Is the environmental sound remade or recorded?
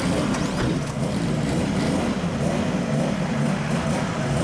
recorded